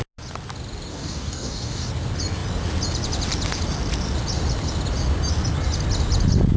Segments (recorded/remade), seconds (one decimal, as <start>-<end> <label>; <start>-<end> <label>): 0.0-0.9 recorded; 0.9-1.9 remade; 1.9-6.6 recorded